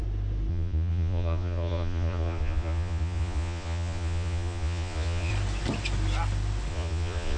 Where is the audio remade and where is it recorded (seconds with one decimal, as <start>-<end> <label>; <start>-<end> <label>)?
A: 0.0-0.5 recorded; 0.5-5.3 remade; 5.3-6.7 recorded; 6.7-7.4 remade